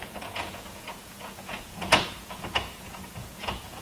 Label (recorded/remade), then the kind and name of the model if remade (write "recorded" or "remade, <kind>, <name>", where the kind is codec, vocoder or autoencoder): remade, vocoder, Vocos